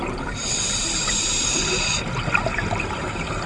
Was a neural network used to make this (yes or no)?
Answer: no